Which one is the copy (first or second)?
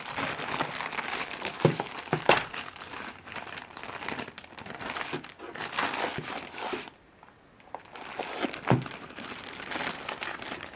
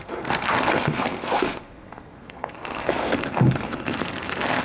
second